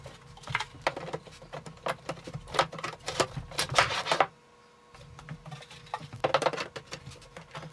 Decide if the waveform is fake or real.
real